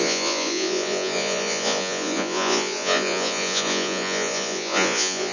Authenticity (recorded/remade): remade